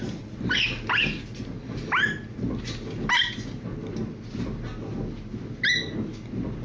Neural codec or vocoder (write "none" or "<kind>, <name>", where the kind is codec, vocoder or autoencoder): none